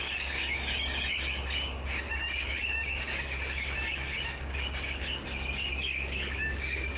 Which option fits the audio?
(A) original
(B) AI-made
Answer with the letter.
B